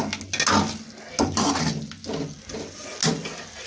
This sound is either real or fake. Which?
real